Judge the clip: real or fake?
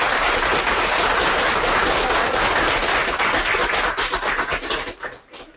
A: real